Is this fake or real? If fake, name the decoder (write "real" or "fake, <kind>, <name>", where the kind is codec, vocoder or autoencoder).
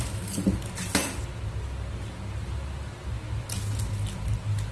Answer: real